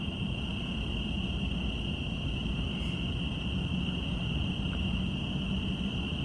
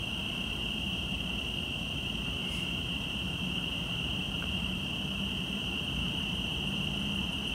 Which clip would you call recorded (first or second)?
first